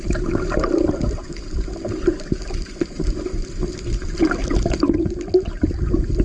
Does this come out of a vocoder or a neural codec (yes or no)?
no